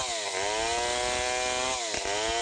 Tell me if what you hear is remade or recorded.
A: recorded